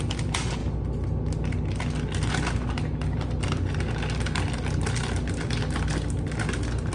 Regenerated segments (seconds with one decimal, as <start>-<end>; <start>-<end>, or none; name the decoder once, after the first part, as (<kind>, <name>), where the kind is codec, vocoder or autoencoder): none